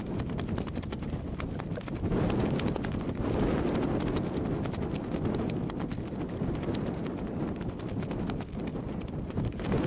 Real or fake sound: real